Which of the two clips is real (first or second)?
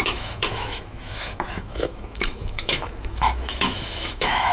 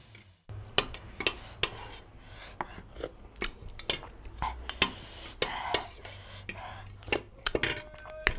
second